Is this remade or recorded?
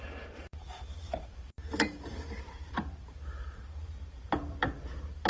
remade